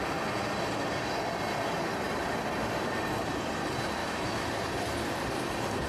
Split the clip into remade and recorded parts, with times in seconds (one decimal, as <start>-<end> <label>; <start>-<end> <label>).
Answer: 0.0-4.0 recorded; 4.0-4.5 remade; 4.5-5.9 recorded